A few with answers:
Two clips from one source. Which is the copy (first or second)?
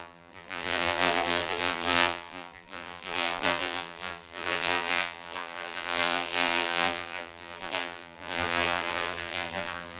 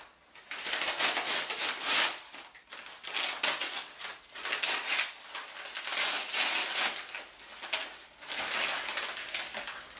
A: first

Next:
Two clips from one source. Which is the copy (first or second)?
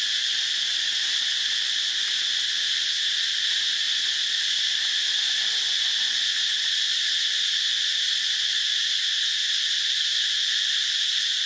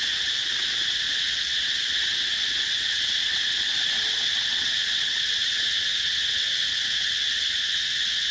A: second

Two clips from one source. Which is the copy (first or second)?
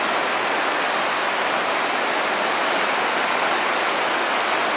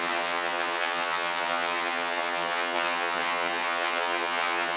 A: second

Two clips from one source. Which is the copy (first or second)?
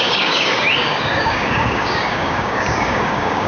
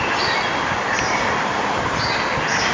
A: first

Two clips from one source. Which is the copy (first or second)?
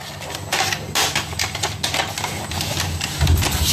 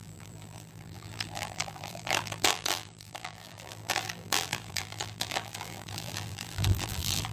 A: second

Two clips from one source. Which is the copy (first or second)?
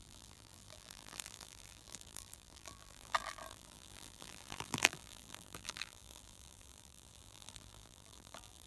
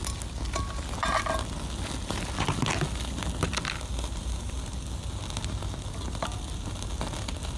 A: first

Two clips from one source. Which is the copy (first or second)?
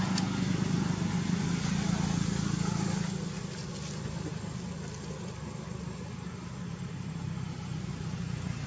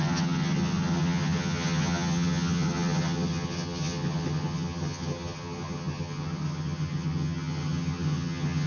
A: second